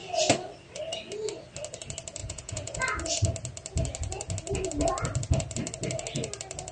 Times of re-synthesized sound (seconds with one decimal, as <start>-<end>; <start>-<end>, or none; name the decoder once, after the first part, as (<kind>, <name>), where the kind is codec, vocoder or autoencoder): 2.2-2.8 (vocoder, Vocos)